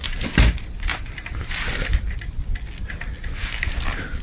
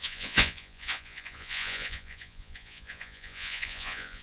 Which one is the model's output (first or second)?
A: second